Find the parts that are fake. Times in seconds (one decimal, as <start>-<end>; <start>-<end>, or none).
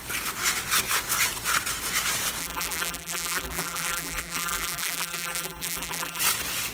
2.4-6.2